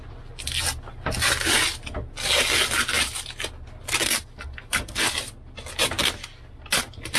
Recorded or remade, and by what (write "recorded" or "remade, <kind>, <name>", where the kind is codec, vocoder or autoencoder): recorded